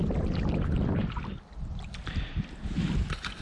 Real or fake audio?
real